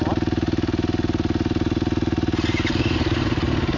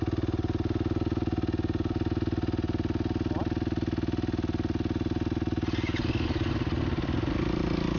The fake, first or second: first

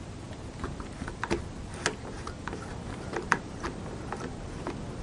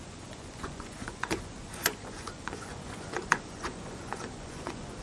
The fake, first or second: second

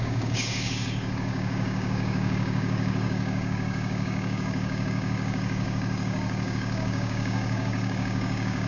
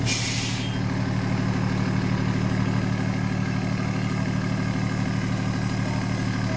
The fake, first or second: first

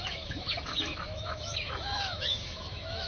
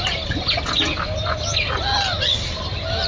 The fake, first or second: first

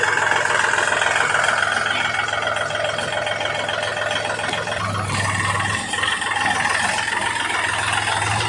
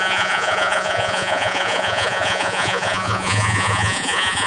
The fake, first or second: second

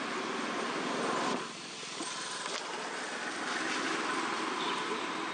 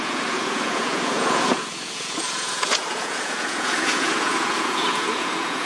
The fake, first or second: second